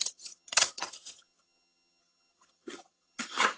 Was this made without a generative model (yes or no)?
no